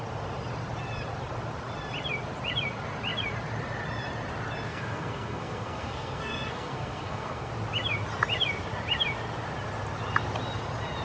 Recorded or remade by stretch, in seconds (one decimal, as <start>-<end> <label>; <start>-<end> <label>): 0.0-4.7 recorded; 4.7-7.5 remade; 7.5-11.0 recorded